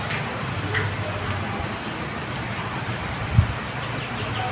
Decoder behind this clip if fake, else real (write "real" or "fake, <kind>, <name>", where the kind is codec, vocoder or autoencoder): real